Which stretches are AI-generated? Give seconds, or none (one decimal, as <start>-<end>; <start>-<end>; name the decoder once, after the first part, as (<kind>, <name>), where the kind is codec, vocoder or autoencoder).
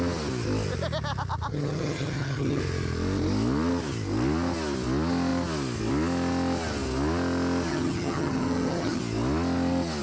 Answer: 1.5-2.6 (vocoder, HiFi-GAN); 7.7-9.0